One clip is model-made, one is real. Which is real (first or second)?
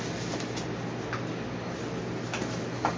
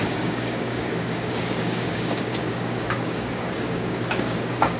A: first